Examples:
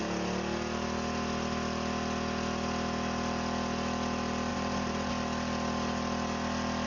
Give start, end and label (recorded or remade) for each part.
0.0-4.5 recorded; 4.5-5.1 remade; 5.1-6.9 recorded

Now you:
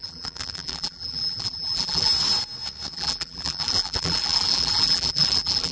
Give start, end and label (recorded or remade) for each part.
0.0-2.1 remade; 2.1-2.9 recorded; 2.9-5.7 remade

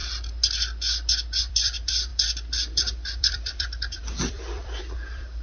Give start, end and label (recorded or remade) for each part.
0.0-1.4 recorded; 1.4-5.4 remade